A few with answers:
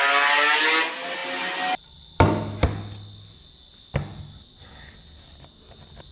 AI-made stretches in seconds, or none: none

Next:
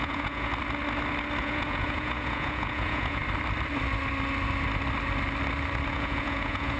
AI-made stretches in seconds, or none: 0.0-0.5; 1.4-3.2; 5.9-6.8